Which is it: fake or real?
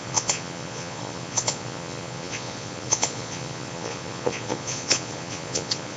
fake